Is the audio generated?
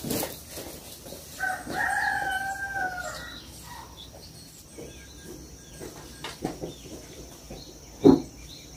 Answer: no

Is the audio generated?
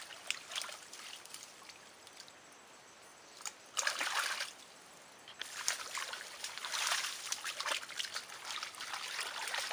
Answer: no